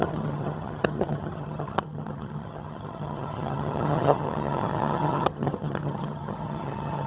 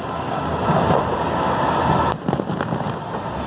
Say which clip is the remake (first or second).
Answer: first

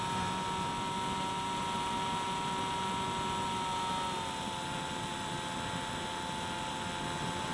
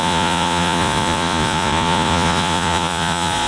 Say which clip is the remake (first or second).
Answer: second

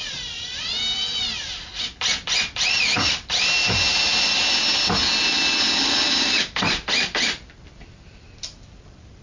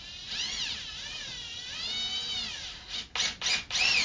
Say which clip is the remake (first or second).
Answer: first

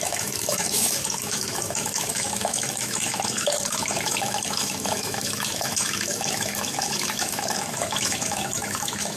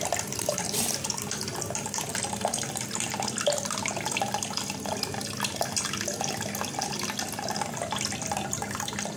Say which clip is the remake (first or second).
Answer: first